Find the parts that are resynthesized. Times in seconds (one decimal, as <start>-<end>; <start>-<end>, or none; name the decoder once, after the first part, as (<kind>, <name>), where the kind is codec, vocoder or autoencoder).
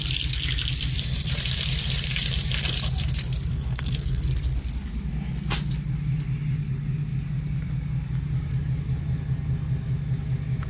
3.5-4.2 (codec, SNAC)